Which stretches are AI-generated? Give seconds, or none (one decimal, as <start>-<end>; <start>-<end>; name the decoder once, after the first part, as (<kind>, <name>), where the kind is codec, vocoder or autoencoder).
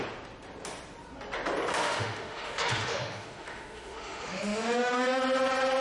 1.7-5.2 (autoencoder, DAC-VAE)